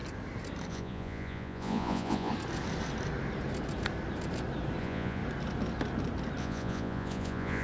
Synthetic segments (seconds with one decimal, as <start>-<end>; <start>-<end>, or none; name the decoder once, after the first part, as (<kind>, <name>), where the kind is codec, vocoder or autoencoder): 0.7-2.3 (vocoder, Vocos); 4.8-5.2; 6.4-7.6